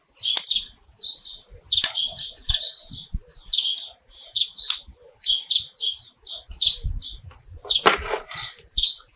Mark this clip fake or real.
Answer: real